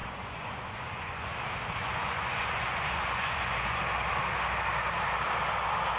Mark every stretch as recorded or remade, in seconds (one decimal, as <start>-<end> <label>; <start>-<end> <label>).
0.0-1.3 remade; 1.3-1.8 recorded; 1.8-3.8 remade; 3.8-6.0 recorded